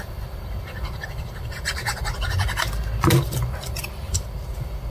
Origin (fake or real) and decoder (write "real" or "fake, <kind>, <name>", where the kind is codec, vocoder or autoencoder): fake, vocoder, BigVGAN v2